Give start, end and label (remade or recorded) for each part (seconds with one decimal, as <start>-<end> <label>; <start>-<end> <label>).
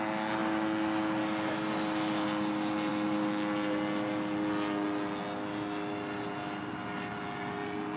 0.0-8.0 recorded